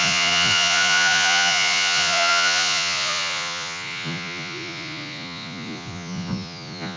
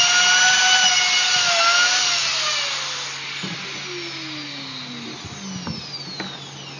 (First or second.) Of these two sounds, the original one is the second